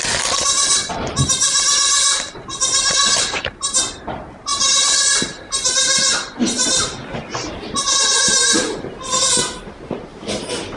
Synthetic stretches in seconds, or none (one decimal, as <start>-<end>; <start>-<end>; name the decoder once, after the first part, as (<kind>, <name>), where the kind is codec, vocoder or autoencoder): 10.1-10.8 (vocoder, BigVGAN v2)

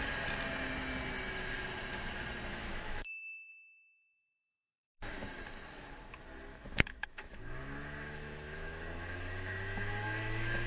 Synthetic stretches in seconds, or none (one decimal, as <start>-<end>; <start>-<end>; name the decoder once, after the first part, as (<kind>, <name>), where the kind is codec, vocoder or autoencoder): 2.5-3.5 (autoencoder, DAC-VAE); 6.5-10.7

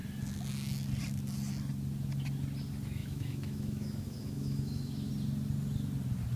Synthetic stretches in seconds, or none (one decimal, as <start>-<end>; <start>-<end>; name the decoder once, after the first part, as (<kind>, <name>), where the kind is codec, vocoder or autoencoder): 3.0-5.1 (autoencoder, DAC-VAE)

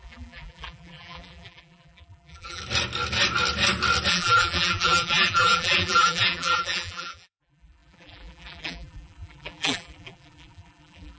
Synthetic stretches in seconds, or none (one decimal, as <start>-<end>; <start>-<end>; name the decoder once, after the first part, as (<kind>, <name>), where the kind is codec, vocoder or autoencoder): 0.0-2.6 (vocoder, BigVGAN v2); 4.1-11.2

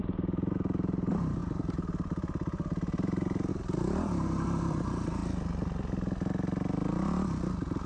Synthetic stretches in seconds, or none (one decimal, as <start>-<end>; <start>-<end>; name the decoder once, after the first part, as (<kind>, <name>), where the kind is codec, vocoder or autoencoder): 0.0-5.2 (vocoder, BigVGAN v2)